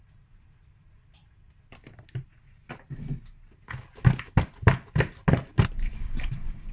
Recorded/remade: recorded